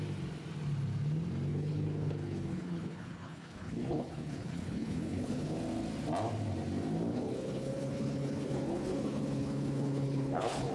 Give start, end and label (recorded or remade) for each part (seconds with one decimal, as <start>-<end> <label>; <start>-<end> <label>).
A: 0.0-1.5 recorded; 1.5-5.6 remade; 5.6-7.1 recorded; 7.1-10.7 remade